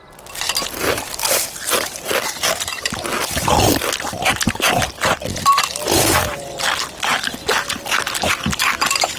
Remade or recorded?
recorded